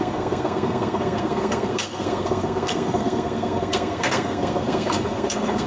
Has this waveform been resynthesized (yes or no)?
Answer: yes